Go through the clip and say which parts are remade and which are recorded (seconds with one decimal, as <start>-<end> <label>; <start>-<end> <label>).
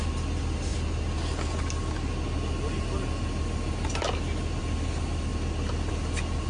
0.0-6.5 recorded